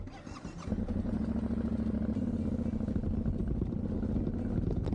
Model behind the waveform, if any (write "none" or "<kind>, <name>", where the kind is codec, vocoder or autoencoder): none